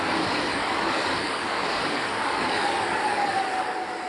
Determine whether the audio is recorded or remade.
remade